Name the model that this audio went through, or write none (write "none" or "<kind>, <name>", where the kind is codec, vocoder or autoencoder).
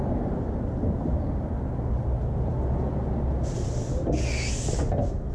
none